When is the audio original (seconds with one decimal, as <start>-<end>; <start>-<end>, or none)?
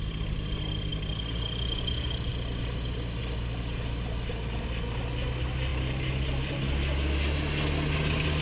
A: 0.0-8.4